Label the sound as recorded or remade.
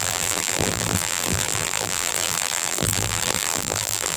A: remade